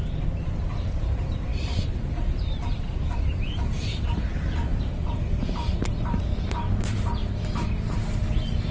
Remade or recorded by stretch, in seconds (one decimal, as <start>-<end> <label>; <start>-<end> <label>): 0.0-7.2 remade; 7.2-8.7 recorded